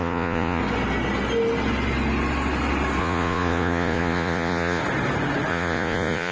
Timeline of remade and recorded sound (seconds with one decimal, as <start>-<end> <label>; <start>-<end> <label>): 0.0-0.6 remade; 0.6-3.0 recorded; 3.0-4.8 remade; 4.8-5.5 recorded; 5.5-6.3 remade